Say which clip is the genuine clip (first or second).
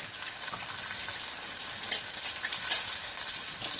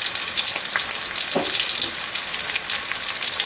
second